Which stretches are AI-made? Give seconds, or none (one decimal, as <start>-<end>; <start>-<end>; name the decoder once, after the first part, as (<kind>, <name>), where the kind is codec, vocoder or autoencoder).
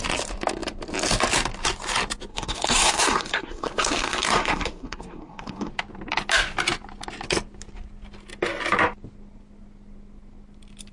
2.3-5.7 (codec, SNAC)